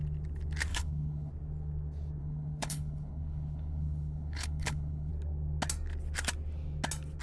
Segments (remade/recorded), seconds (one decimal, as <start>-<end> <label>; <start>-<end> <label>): 0.0-0.7 recorded; 0.7-1.3 remade; 1.3-2.2 recorded; 2.2-5.1 remade; 5.1-7.2 recorded